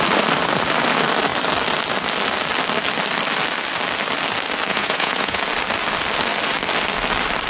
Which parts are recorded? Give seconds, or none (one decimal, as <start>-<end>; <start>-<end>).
0.0-4.7; 5.4-7.5